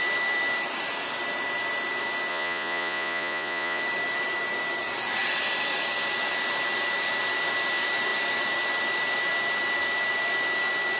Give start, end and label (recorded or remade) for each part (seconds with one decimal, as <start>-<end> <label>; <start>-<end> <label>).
0.0-2.3 recorded; 2.3-3.8 remade; 3.8-11.0 recorded